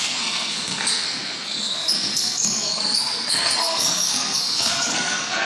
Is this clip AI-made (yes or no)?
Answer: yes